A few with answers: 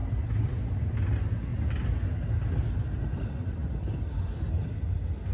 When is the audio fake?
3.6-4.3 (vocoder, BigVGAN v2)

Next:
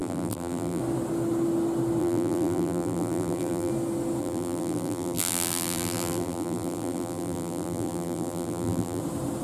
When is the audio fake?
0.0-0.8 (vocoder, BigVGAN v2); 2.0-3.7; 4.2-9.0

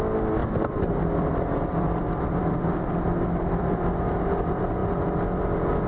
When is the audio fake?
0.4-3.9 (vocoder, BigVGAN v2)